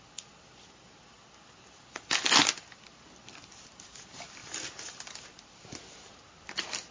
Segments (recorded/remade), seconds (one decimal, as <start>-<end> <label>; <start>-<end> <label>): 0.0-6.9 recorded